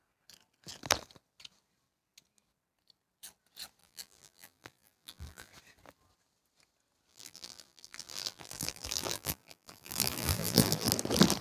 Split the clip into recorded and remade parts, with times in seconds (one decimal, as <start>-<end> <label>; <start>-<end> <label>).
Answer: 0.0-3.8 recorded; 3.8-5.5 remade; 5.5-7.1 recorded; 7.1-10.9 remade; 10.9-11.4 recorded